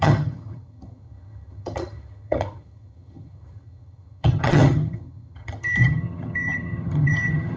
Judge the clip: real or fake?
fake